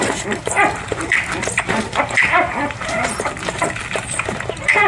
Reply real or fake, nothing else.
fake